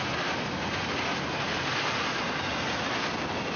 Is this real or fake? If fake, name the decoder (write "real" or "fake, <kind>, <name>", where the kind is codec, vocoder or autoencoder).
real